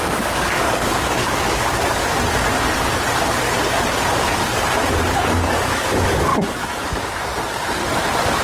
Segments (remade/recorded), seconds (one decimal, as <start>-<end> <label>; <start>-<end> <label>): 0.0-2.0 remade; 2.0-4.9 recorded; 4.9-6.3 remade; 6.3-8.4 recorded